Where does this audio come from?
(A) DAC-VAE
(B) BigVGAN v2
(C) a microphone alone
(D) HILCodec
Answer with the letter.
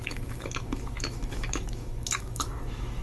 A